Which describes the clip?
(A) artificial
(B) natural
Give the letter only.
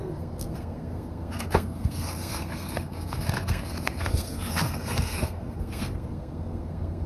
A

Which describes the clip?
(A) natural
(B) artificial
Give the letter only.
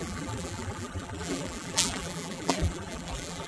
B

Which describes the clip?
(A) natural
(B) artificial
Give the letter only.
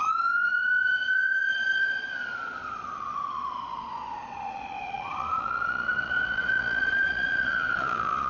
B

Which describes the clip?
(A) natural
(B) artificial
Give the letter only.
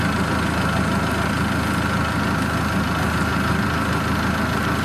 A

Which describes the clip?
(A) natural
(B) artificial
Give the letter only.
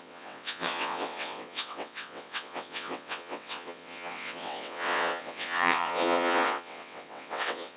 B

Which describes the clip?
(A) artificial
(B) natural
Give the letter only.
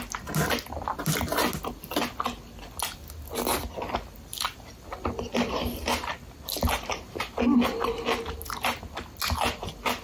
B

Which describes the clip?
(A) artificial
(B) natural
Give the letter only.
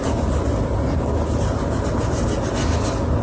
B